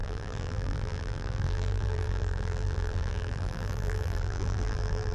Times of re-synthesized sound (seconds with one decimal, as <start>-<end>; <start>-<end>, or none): 0.0-5.1